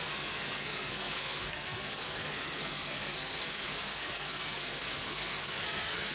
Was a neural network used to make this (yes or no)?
yes